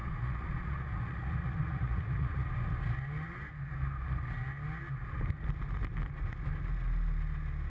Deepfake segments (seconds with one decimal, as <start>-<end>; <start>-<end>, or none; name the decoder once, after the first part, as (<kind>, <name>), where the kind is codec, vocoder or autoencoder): 0.0-2.5 (vocoder, Vocos)